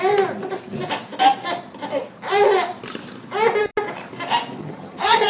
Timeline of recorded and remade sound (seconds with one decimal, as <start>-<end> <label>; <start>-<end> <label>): 0.0-4.6 recorded; 4.6-5.3 remade